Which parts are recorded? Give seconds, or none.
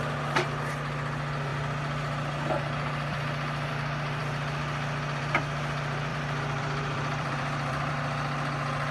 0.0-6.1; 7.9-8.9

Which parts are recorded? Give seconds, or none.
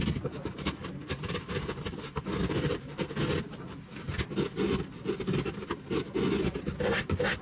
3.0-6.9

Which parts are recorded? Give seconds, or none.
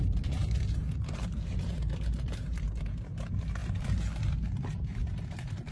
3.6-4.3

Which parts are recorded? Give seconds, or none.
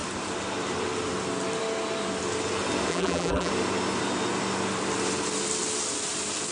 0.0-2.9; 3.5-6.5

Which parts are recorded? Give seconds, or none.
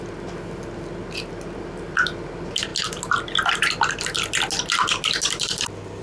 0.0-6.0